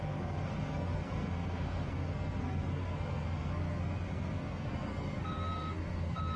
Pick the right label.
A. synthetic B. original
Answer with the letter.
A